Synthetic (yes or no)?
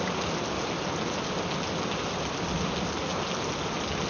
no